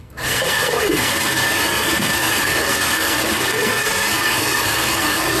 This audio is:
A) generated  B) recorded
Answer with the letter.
A